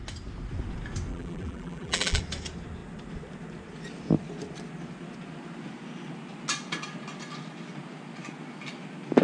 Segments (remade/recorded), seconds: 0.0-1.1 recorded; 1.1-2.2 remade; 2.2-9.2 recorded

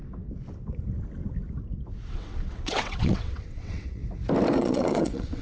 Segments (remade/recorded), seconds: 0.0-2.1 recorded; 2.1-4.0 remade; 4.0-4.6 recorded; 4.6-5.4 remade

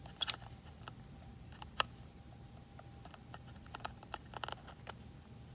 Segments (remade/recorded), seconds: 0.0-1.3 recorded; 1.3-2.7 remade; 2.7-3.2 recorded; 3.2-4.3 remade; 4.3-5.5 recorded